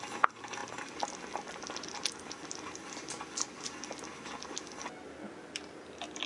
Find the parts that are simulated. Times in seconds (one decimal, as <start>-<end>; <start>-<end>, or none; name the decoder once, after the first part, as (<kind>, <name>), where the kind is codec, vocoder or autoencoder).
none